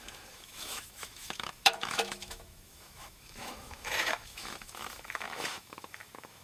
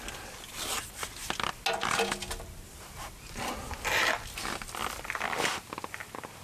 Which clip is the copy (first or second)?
first